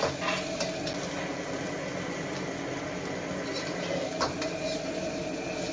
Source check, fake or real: real